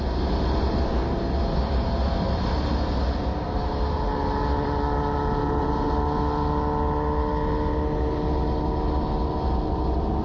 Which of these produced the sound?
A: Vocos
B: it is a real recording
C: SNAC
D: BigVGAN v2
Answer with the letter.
B